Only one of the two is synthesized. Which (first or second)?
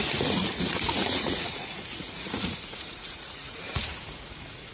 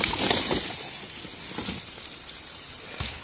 first